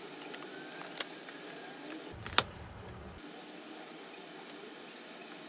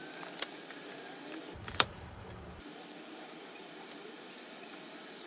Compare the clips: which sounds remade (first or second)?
second